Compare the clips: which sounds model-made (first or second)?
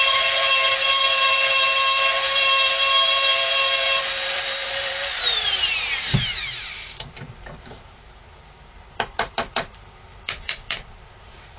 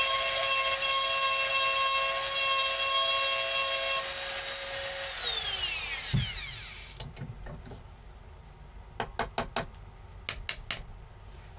first